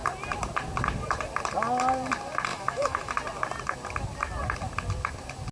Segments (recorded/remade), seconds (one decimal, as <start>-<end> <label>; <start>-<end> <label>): 0.0-2.5 recorded; 2.5-3.1 remade; 3.1-5.5 recorded